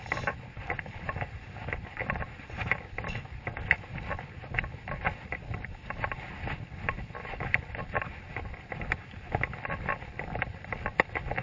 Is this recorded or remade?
recorded